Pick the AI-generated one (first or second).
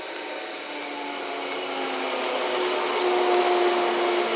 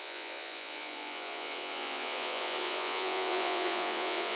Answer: second